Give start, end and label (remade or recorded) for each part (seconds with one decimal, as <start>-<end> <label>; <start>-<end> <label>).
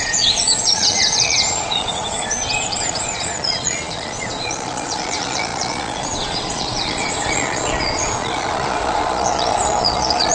0.0-10.3 remade